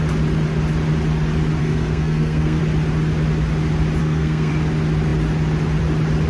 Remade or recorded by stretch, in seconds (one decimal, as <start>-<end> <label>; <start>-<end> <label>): 0.0-1.6 recorded; 1.6-2.6 remade; 2.6-4.0 recorded; 4.0-4.5 remade; 4.5-6.3 recorded